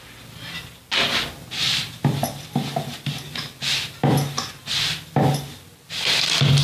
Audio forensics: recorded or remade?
recorded